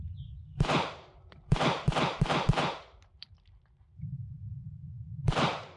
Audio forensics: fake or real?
fake